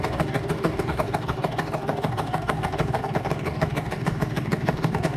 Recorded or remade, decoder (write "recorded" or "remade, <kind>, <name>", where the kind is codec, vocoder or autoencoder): remade, codec, DAC